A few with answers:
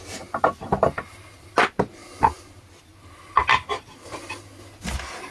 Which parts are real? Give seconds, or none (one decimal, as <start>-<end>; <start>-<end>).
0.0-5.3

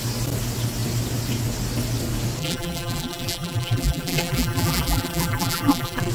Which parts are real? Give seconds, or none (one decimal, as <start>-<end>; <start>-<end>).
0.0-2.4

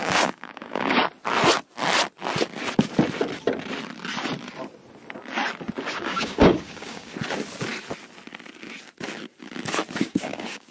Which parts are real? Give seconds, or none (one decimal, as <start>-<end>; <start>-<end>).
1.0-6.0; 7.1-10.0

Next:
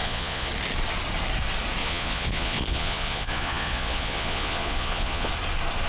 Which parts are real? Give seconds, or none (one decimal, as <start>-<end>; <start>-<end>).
0.5-1.8; 5.3-5.9

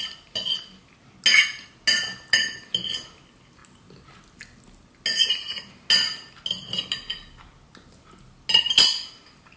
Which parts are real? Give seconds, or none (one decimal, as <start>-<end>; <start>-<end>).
0.0-9.6

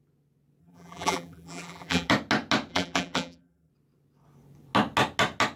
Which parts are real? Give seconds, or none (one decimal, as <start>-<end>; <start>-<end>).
0.0-0.6; 2.1-2.7; 3.7-5.6

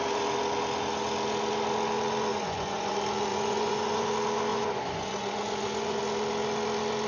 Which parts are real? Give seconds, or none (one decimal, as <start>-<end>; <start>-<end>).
0.0-2.3; 2.9-3.3; 4.1-4.5; 6.0-7.1

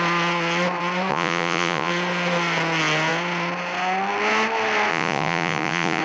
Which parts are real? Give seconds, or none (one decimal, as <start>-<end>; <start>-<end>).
0.0-1.1; 1.9-4.9